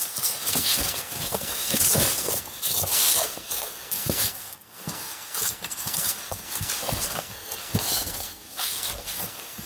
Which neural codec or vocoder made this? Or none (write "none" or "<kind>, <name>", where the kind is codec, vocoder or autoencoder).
codec, SNAC